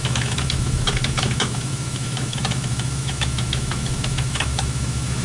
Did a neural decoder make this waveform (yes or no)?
yes